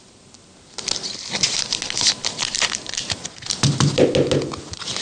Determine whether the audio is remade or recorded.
recorded